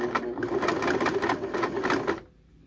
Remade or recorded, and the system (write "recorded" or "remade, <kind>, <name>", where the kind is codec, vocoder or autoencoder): recorded